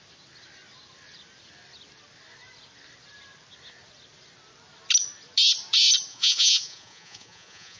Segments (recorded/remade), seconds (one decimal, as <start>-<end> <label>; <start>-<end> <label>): 0.0-6.1 recorded; 6.1-7.8 remade